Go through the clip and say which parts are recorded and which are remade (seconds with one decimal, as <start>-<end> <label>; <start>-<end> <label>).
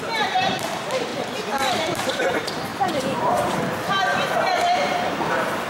0.0-5.7 remade